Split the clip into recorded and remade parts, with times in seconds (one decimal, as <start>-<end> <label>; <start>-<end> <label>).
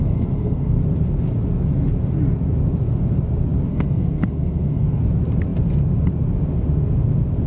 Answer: 0.0-0.8 remade; 0.8-3.7 recorded; 3.7-5.0 remade; 5.0-7.5 recorded